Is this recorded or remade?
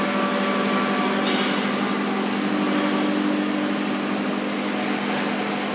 recorded